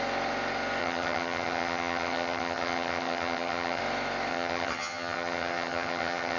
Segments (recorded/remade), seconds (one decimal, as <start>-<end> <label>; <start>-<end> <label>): 0.0-0.8 recorded; 0.8-3.8 remade; 3.8-4.3 recorded; 4.3-6.4 remade